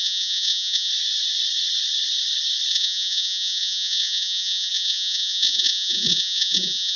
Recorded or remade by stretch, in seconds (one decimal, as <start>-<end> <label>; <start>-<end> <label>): 0.0-0.9 remade; 0.9-2.7 recorded; 2.7-7.0 remade